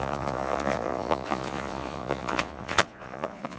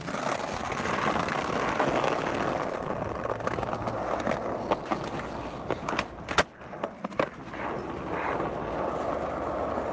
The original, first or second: second